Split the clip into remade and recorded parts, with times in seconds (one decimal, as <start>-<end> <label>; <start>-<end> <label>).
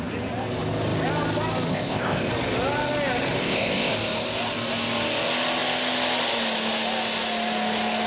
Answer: 0.0-1.7 recorded; 1.7-2.3 remade; 2.3-3.4 recorded; 3.4-3.9 remade; 3.9-8.1 recorded